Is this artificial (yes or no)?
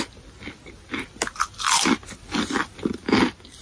no